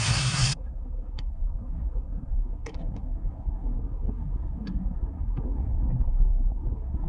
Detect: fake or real fake